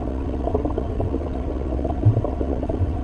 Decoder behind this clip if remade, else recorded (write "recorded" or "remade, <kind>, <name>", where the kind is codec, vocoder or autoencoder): remade, vocoder, WaveNeXt